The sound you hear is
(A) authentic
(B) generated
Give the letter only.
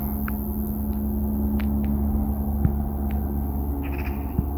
A